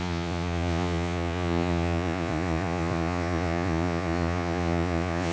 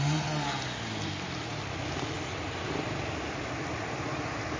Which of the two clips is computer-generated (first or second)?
first